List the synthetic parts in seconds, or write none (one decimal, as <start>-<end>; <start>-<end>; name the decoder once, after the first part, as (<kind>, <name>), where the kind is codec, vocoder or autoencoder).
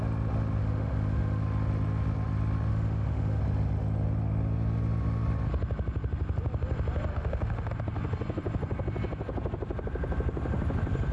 0.6-1.4 (autoencoder, DAC-VAE); 2.7-3.4; 7.1-7.7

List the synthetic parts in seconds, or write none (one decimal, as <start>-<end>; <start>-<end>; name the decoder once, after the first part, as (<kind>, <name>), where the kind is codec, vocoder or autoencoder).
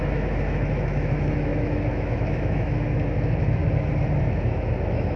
0.0-3.6 (autoencoder, DAC-VAE); 4.2-5.2